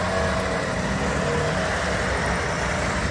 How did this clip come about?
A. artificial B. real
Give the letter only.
B